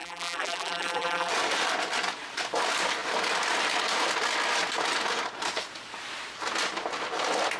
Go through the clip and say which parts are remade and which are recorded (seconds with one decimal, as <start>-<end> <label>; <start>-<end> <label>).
0.0-1.3 remade; 1.3-7.6 recorded